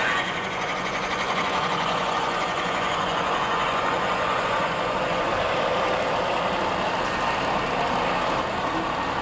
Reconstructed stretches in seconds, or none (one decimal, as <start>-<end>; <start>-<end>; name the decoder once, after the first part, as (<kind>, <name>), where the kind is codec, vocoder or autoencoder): 0.0-5.3 (vocoder, Vocos)